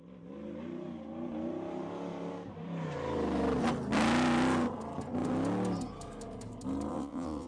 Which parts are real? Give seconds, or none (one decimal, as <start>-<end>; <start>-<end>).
0.0-6.9